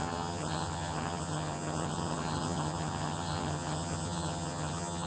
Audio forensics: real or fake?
fake